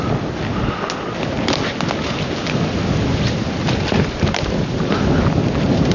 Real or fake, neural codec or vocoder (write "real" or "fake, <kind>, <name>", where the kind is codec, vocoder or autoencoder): real